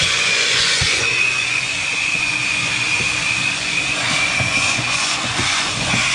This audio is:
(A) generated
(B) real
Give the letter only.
A